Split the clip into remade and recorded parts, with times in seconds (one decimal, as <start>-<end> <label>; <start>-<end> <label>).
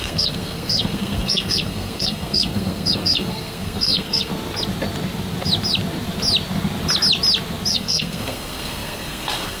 0.0-4.3 remade; 4.3-7.7 recorded; 7.7-9.6 remade